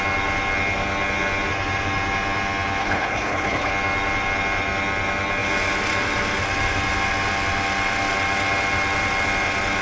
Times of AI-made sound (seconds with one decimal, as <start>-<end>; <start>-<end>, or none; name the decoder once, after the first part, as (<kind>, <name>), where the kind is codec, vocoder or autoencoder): 2.8-3.7 (codec, HILCodec)